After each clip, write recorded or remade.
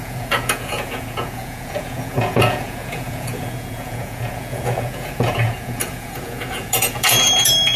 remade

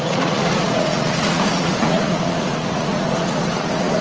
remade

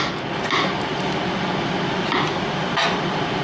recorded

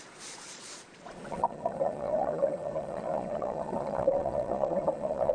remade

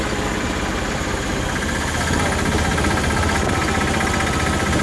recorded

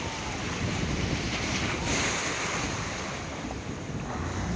recorded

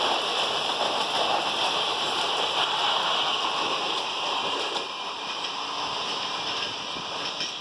recorded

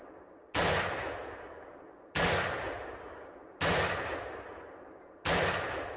recorded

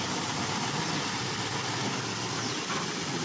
recorded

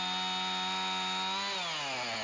recorded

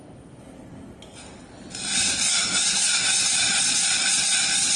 recorded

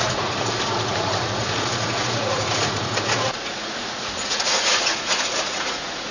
remade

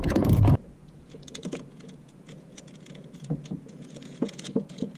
remade